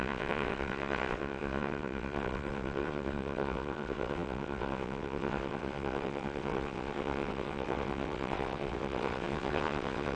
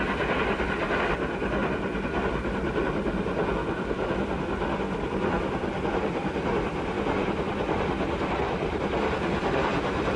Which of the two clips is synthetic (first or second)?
first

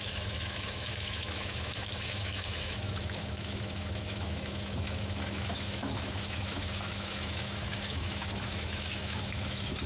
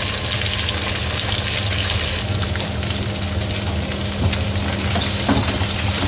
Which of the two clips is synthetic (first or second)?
first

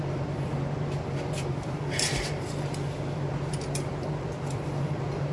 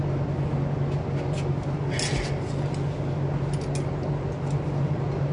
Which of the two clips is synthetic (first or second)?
first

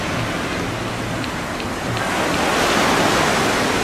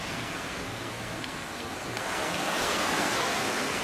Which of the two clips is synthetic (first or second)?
second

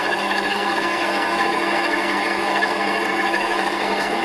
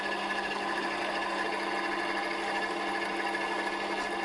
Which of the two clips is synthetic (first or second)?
first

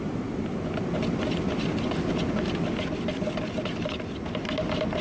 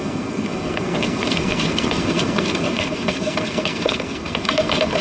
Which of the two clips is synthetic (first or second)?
second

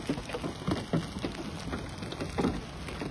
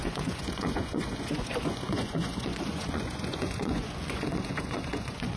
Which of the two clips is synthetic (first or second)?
second